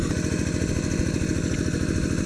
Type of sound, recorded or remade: recorded